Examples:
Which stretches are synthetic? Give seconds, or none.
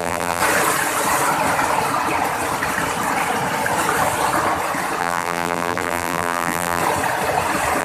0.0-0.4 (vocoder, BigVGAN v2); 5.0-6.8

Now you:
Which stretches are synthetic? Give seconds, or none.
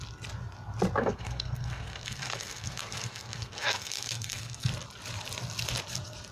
1.0-4.7 (codec, SNAC)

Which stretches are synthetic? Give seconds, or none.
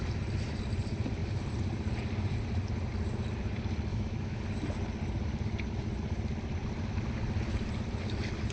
3.9-4.4 (autoencoder, DAC-VAE)